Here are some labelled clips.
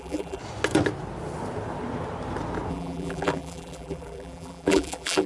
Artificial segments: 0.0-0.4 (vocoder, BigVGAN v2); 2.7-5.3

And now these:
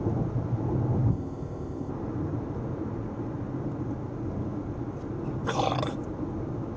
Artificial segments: 1.1-1.9 (codec, ZipCodec)

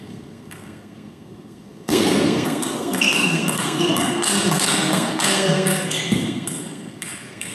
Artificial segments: 0.0-7.5 (codec, SNAC)

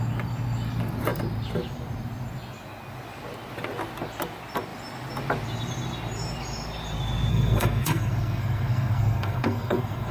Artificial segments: 7.3-10.1 (codec, SNAC)

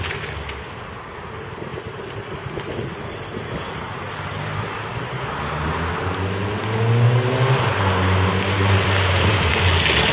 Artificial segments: none